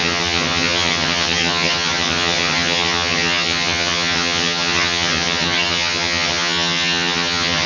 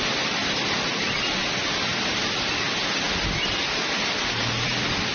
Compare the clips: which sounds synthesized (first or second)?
first